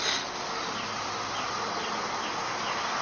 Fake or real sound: real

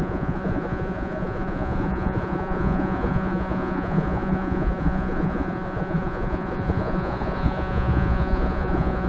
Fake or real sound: fake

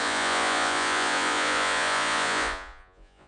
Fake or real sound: fake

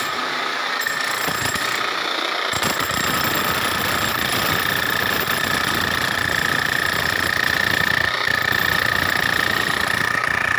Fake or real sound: real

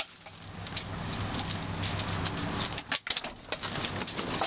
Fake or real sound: real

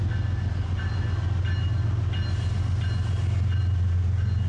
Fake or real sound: real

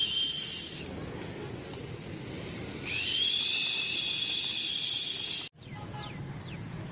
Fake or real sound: real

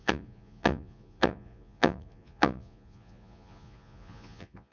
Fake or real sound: fake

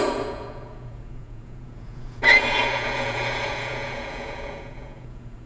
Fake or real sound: fake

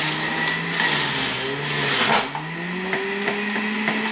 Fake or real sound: real